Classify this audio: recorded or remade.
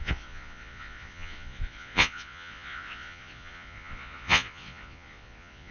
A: remade